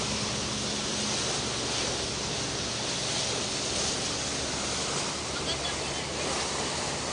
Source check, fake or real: real